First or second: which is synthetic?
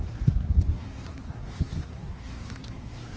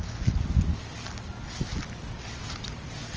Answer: first